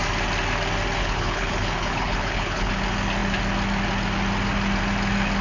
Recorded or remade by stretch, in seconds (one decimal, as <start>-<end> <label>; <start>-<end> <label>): 0.0-1.0 recorded; 1.0-2.7 remade; 2.7-5.4 recorded